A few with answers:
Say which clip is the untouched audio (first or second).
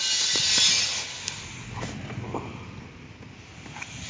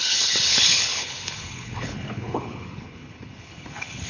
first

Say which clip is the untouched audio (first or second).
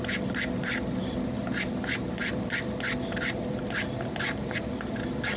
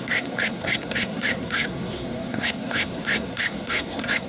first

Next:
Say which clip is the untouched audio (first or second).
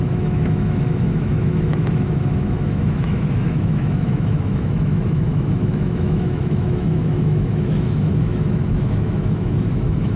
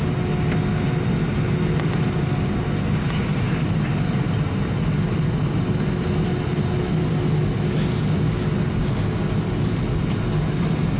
second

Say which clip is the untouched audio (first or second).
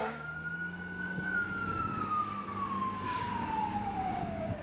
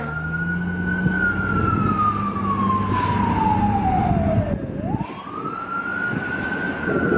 second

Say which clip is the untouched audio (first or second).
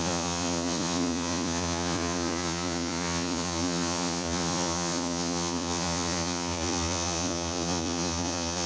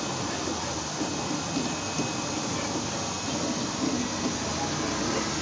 second